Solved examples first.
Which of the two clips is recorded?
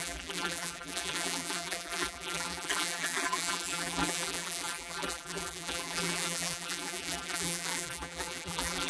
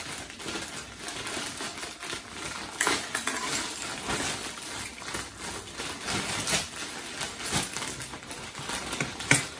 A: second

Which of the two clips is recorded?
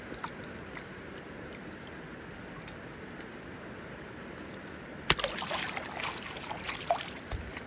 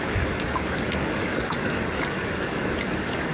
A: first